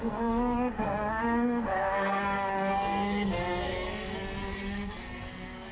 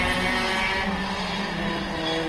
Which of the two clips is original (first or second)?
second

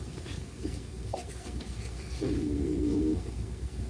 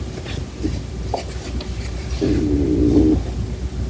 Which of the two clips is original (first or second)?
second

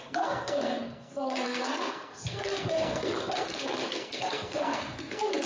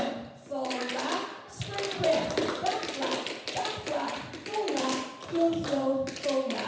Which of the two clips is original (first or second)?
second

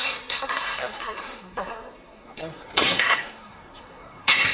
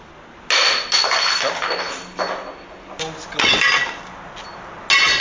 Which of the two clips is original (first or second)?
second